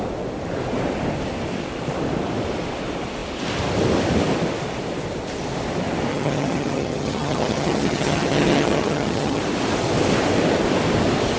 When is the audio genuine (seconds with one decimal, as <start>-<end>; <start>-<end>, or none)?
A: 0.0-6.1; 9.4-11.4